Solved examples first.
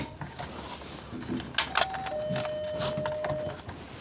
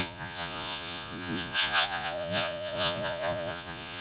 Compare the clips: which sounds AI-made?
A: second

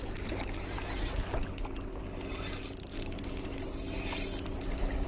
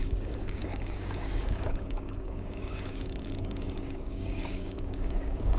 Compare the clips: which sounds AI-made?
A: second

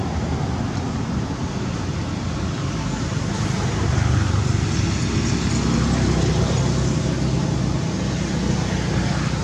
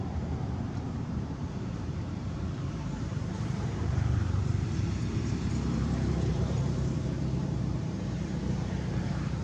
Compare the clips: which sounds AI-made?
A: second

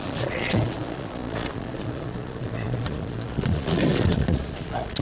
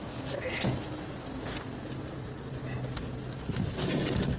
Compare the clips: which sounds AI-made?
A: first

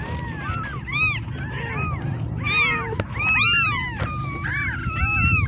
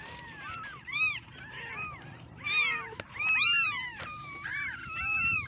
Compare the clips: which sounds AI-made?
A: second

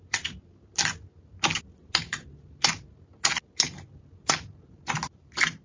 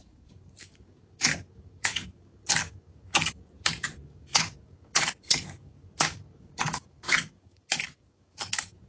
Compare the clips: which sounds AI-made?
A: second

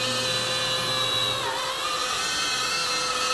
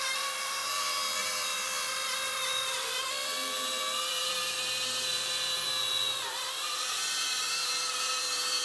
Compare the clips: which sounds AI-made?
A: second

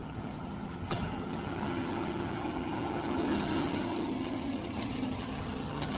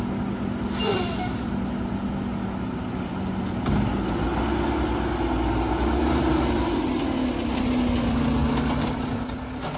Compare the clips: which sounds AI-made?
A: first